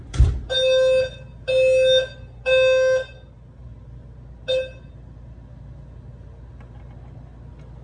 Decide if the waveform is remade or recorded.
recorded